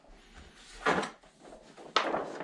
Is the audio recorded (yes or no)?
yes